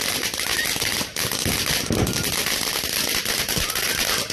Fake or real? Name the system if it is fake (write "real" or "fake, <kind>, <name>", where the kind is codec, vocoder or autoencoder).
real